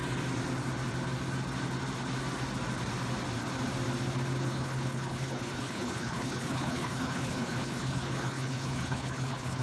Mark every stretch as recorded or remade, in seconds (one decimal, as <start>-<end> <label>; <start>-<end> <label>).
0.0-4.4 recorded; 4.4-9.6 remade